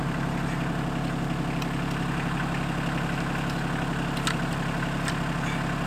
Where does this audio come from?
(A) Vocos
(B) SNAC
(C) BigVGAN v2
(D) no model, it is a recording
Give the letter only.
D